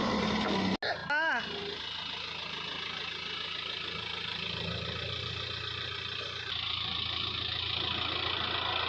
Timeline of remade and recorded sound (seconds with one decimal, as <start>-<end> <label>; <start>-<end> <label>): 0.0-8.9 recorded